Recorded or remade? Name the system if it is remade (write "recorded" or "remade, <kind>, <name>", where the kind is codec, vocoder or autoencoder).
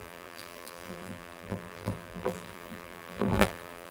remade, vocoder, BigVGAN v2